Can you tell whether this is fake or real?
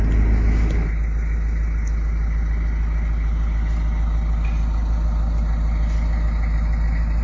real